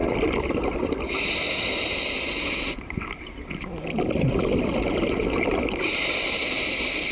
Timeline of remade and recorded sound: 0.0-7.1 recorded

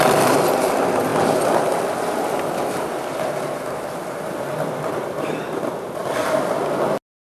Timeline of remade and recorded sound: 0.0-7.2 recorded

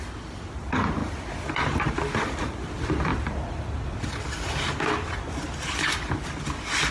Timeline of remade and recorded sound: 0.0-3.1 recorded; 3.1-4.0 remade; 4.0-6.9 recorded

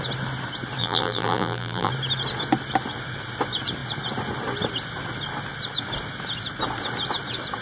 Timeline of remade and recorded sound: 0.0-0.8 recorded; 0.8-1.9 remade; 1.9-7.6 recorded

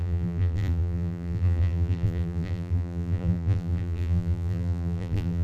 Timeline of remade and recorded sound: 0.0-5.4 remade

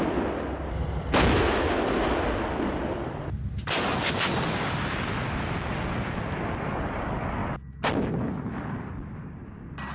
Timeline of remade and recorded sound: 0.0-9.9 recorded